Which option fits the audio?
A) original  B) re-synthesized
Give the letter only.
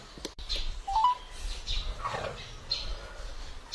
A